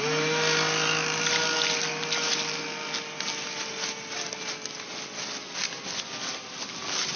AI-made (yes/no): no